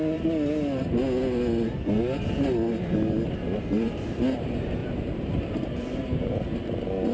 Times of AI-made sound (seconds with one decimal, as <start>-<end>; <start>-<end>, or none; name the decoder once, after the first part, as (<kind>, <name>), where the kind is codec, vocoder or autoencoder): 4.8-6.0 (vocoder, BigVGAN v2)